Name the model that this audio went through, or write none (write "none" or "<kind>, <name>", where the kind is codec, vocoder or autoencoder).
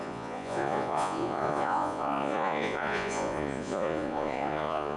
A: vocoder, Vocos